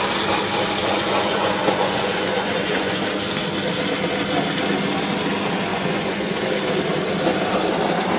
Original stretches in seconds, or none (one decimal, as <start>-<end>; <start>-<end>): 0.0-0.8; 3.0-5.7; 6.5-8.2